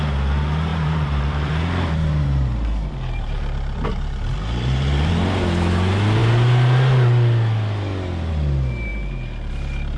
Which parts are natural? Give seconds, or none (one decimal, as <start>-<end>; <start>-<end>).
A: 0.0-0.7; 5.1-10.0